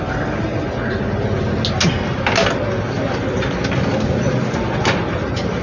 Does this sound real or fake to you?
real